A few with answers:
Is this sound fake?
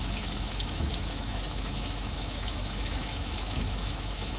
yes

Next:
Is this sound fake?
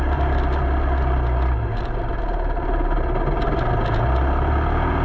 no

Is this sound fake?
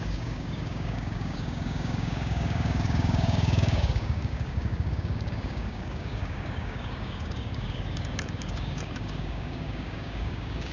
yes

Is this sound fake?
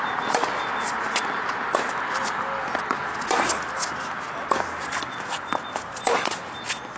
no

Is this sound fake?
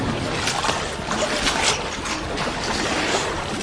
no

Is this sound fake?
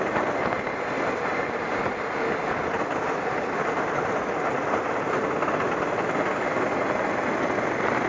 no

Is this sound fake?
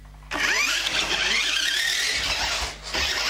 no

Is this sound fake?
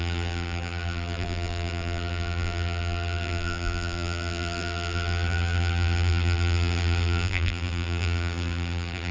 yes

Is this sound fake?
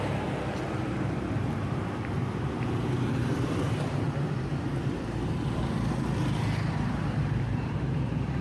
yes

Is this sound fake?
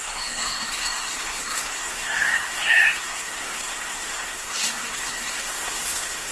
yes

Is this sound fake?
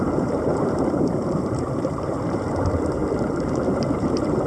yes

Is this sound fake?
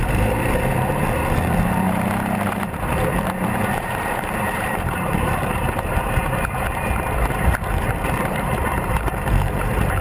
yes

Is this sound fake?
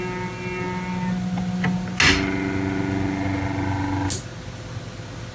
no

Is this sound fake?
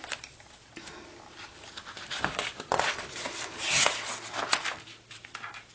no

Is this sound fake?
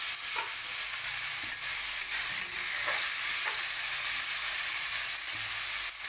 no